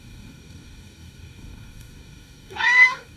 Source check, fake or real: fake